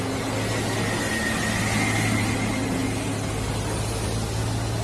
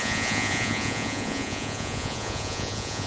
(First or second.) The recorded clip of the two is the first